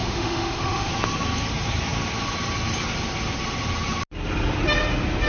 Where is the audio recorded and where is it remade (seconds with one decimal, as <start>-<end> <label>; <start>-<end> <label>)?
0.0-0.9 remade; 0.9-5.3 recorded